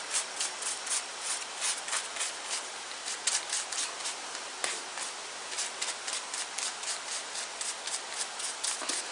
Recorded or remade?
recorded